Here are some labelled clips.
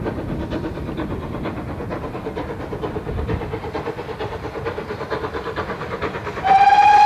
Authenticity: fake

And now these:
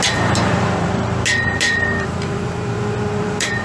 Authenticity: fake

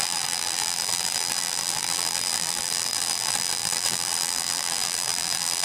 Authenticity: fake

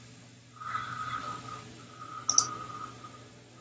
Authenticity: real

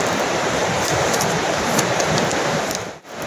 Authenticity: fake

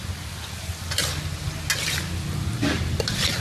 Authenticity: real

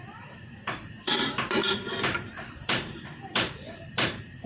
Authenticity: fake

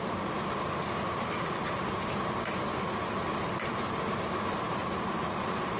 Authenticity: fake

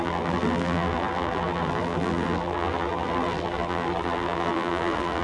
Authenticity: fake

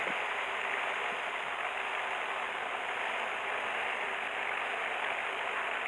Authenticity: real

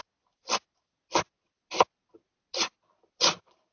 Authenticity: real